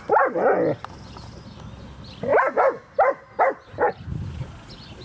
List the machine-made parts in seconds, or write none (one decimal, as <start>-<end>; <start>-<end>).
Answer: none